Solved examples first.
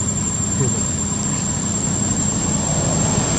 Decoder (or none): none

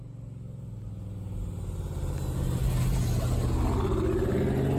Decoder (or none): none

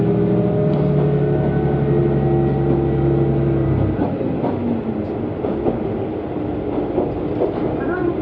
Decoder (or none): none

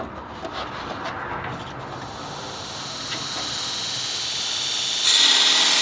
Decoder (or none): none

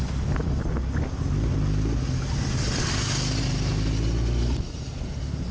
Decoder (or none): none